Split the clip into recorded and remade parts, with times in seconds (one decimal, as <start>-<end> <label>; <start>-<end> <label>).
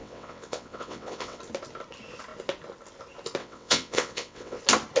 0.0-1.4 remade; 1.4-3.4 recorded; 3.4-4.6 remade; 4.6-5.0 recorded